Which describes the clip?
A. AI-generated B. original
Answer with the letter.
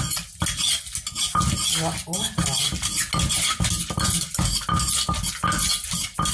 B